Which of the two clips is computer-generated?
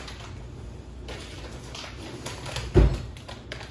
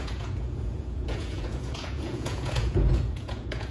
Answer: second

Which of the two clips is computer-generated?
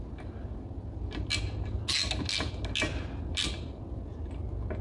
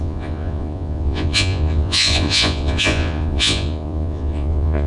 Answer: second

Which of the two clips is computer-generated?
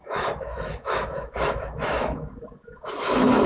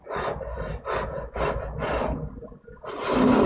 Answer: first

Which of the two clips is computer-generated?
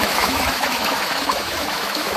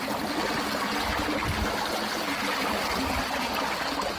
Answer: first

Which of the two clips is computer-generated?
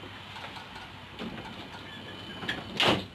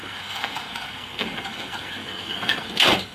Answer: second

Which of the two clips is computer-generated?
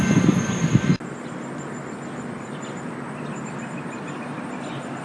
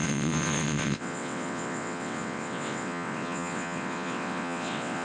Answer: second